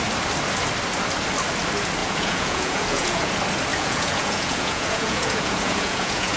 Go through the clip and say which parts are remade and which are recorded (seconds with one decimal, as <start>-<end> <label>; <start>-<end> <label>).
0.0-2.0 recorded; 2.0-3.3 remade; 3.3-3.7 recorded; 3.7-6.4 remade